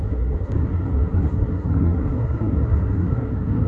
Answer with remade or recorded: remade